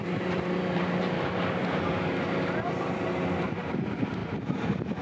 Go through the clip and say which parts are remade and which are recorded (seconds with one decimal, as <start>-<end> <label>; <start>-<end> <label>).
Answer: 0.0-5.0 remade